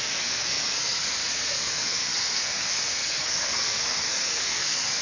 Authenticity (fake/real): fake